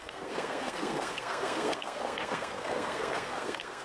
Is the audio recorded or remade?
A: remade